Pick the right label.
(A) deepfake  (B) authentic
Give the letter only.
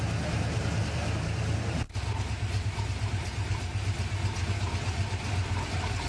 B